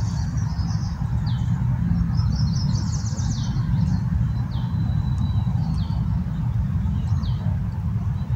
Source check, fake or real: real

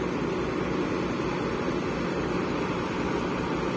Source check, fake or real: real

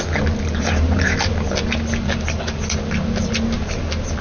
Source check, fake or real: real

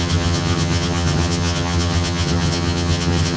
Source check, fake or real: fake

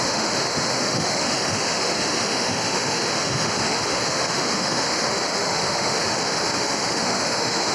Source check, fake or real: fake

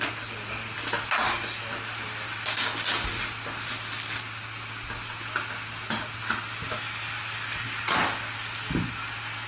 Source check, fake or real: real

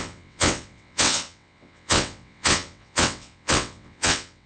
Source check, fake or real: fake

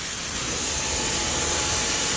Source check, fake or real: real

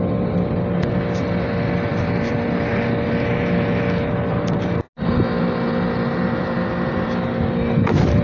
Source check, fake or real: real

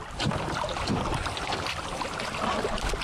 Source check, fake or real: real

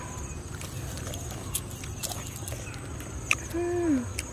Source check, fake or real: real